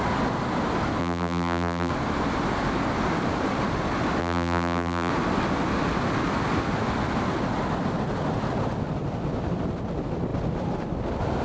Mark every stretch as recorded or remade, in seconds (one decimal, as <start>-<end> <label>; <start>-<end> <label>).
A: 0.0-1.0 recorded; 1.0-1.9 remade; 1.9-4.2 recorded; 4.2-5.1 remade; 5.1-11.4 recorded